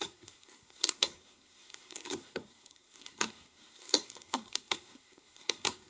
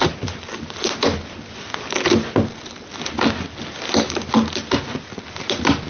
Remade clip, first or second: first